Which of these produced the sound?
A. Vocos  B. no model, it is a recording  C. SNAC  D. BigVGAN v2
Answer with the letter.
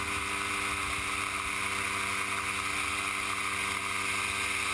B